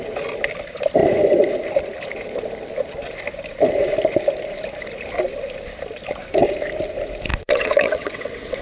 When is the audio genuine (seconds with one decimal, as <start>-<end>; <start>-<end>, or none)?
0.0-7.3